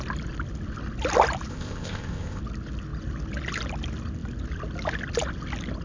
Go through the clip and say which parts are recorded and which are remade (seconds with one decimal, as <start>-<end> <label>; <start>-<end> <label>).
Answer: 0.0-1.5 recorded; 1.5-2.4 remade; 2.4-5.8 recorded